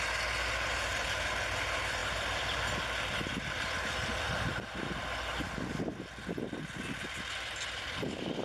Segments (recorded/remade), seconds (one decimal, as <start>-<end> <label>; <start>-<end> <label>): 0.0-8.4 recorded